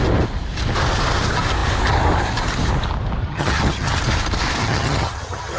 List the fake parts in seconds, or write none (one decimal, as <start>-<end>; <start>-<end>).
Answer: 3.2-4.0; 4.6-5.6